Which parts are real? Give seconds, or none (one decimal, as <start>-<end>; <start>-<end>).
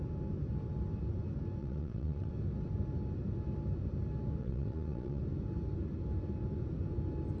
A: 0.0-1.6; 2.3-4.4; 5.2-7.4